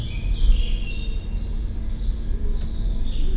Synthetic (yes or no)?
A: no